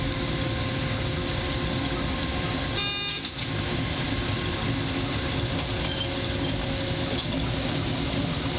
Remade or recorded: recorded